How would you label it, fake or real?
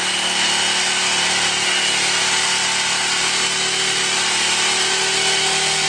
real